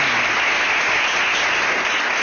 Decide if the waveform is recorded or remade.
recorded